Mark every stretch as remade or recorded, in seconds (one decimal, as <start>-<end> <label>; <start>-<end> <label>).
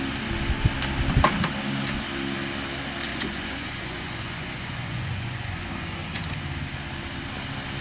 0.0-3.1 recorded; 3.1-6.4 remade; 6.4-7.8 recorded